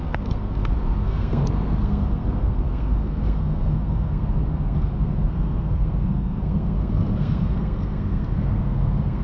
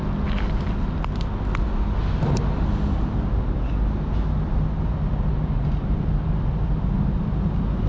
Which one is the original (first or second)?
second